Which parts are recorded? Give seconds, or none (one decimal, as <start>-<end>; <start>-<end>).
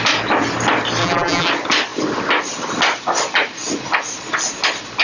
0.0-1.0; 1.5-5.0